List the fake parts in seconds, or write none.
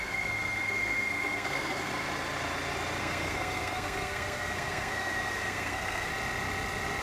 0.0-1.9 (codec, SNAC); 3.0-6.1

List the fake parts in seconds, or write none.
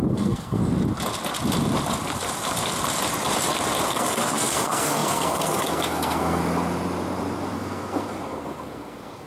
0.0-0.6 (codec, SNAC); 3.8-6.4; 7.5-9.3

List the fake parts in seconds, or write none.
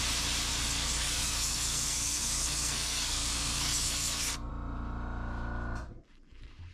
0.5-4.5 (codec, SNAC)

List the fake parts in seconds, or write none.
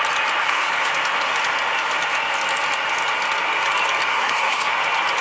0.4-0.9 (codec, SNAC); 4.1-4.7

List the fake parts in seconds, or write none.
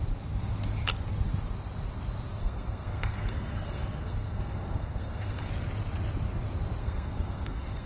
2.4-5.5 (codec, SNAC); 6.8-7.9